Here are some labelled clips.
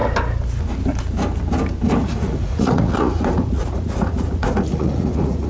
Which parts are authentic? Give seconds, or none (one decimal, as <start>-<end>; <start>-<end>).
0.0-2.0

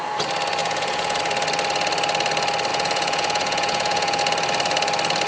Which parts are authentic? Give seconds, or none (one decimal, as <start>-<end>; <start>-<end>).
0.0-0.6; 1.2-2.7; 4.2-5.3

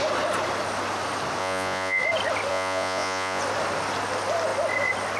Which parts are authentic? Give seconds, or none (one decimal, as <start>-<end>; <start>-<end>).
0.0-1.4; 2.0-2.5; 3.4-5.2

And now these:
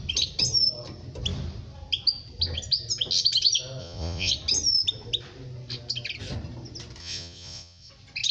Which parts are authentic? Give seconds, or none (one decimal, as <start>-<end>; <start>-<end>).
0.0-3.8; 4.3-7.0; 7.9-8.3

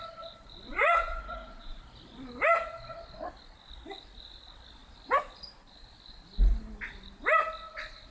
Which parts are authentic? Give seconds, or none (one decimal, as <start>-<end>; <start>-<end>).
0.0-0.7; 1.8-8.1

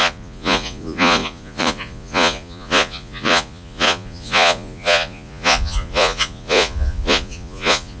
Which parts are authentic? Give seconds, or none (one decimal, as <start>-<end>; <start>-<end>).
none

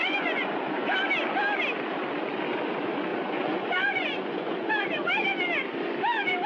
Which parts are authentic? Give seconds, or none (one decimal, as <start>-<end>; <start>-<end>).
0.6-3.1; 4.7-6.5

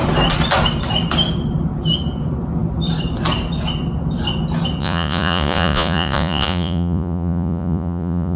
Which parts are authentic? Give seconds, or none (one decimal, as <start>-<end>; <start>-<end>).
0.0-4.8